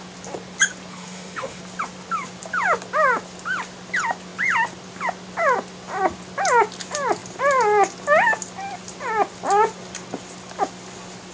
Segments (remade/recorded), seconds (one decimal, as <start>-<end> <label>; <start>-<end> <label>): 0.0-0.9 recorded; 0.9-1.6 remade; 1.6-11.3 recorded